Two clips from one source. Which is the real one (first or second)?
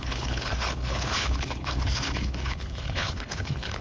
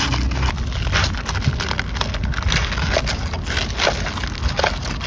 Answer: second